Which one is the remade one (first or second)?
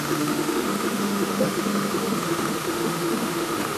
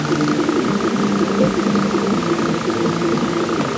first